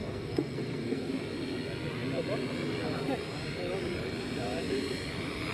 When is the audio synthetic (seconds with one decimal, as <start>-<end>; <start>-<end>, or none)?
0.0-1.1